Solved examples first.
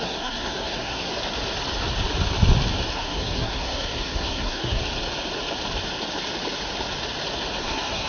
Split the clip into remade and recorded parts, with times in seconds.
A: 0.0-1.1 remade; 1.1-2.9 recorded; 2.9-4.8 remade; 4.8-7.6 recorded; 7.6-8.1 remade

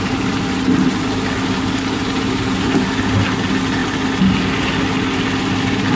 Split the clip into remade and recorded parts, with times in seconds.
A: 0.0-6.0 recorded

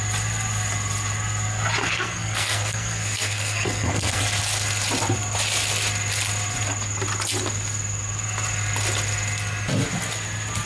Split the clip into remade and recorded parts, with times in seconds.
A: 0.0-1.8 recorded; 1.8-4.2 remade; 4.2-10.7 recorded

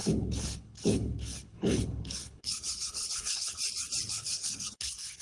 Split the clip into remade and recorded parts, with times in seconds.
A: 0.0-3.6 remade; 3.6-4.1 recorded; 4.1-5.2 remade

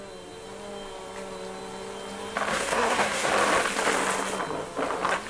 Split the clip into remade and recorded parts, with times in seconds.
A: 0.0-2.5 recorded; 2.5-3.3 remade; 3.3-5.3 recorded

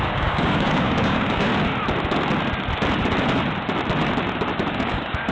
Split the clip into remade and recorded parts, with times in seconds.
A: 0.0-1.5 remade; 1.5-4.7 recorded; 4.7-5.3 remade

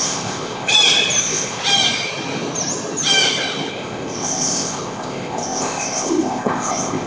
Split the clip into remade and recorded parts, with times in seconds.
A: 0.0-0.7 remade; 0.7-1.2 recorded; 1.2-1.6 remade; 1.6-3.7 recorded; 3.7-7.1 remade